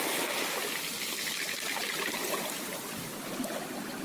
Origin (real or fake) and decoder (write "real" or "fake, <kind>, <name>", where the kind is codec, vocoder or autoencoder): real